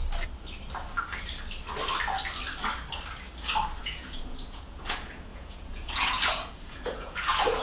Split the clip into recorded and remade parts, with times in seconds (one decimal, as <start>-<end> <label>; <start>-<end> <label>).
0.0-3.8 recorded; 3.8-7.6 remade